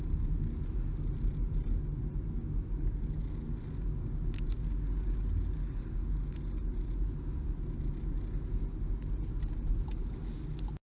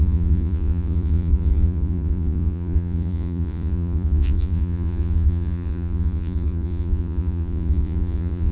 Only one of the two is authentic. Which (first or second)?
first